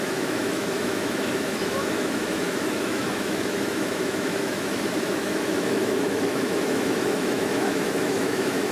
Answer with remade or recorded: remade